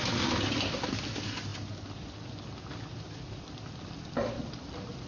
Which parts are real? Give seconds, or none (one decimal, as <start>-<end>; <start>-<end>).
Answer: 0.0-5.1